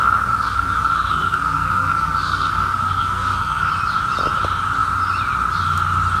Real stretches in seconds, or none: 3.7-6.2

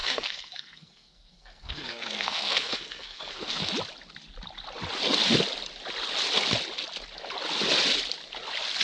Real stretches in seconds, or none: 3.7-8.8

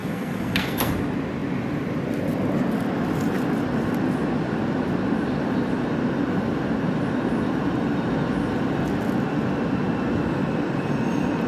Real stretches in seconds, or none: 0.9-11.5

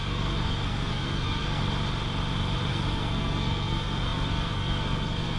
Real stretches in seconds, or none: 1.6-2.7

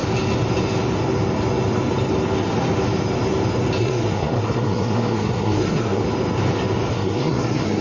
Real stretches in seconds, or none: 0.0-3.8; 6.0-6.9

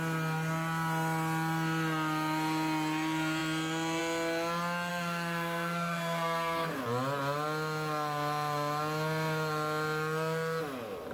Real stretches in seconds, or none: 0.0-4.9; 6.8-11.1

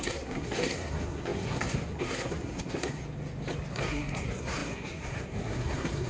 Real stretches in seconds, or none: 3.0-3.7